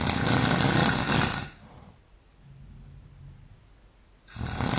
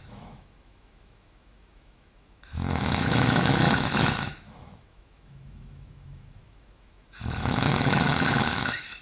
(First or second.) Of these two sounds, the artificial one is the second